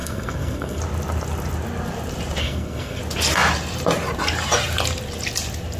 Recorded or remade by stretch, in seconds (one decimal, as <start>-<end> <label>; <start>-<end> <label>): 0.0-0.8 remade; 0.8-2.4 recorded; 2.4-3.0 remade; 3.0-5.8 recorded